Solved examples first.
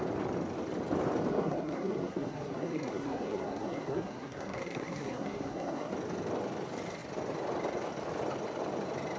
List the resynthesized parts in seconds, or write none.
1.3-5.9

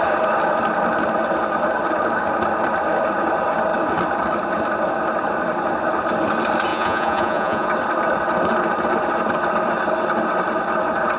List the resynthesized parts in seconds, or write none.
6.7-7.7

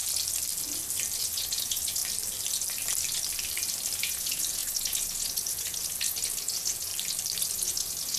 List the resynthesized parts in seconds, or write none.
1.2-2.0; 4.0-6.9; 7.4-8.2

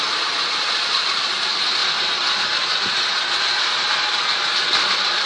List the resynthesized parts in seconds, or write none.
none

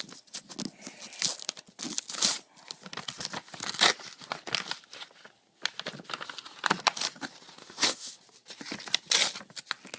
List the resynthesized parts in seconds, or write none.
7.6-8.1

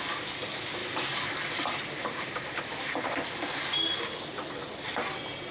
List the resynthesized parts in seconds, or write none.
0.8-3.3